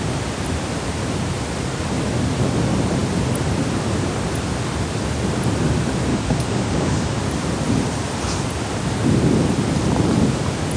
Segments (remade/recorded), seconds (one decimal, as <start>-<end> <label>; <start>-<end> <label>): 0.0-6.1 recorded; 6.1-7.2 remade; 7.2-10.8 recorded